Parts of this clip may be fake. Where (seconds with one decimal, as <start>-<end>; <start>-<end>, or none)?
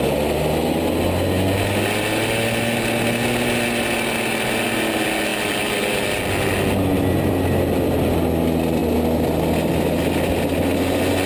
none